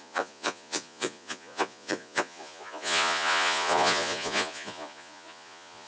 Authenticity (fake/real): fake